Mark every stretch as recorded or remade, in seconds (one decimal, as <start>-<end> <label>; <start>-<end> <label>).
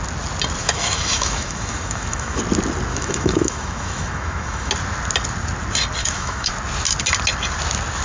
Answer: 0.0-0.6 recorded; 0.6-2.4 remade; 2.4-2.9 recorded; 2.9-4.7 remade; 4.7-6.0 recorded; 6.0-6.5 remade; 6.5-8.0 recorded